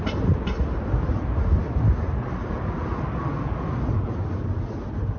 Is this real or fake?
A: real